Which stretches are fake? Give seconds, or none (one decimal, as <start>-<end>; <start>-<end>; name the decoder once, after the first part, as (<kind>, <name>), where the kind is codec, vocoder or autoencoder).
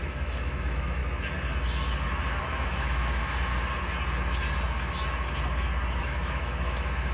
0.0-1.0 (autoencoder, DAC-VAE); 2.4-3.5; 6.0-7.1